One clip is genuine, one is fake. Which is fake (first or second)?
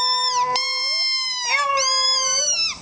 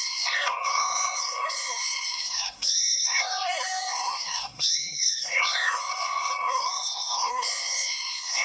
second